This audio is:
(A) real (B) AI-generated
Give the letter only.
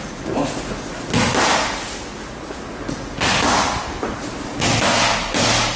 A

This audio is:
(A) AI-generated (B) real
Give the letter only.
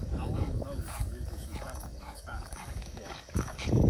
A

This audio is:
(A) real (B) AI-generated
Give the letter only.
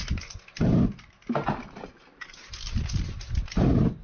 A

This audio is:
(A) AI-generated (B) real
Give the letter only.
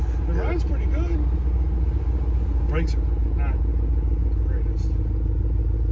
B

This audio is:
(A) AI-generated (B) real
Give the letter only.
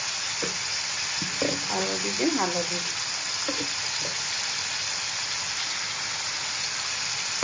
B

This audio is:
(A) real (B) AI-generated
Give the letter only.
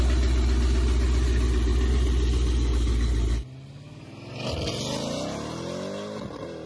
A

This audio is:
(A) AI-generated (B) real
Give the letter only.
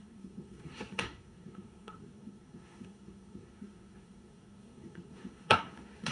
A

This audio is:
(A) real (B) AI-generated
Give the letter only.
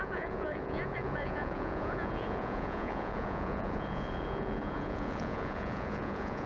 B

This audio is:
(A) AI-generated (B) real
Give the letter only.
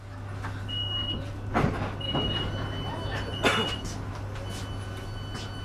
B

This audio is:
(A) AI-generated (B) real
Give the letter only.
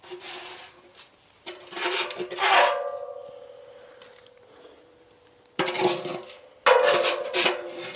B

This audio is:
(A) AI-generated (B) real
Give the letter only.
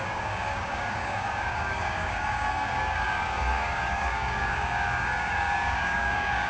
A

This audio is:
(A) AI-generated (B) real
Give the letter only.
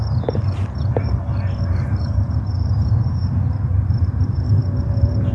A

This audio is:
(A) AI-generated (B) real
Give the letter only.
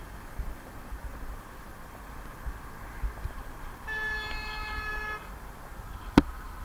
B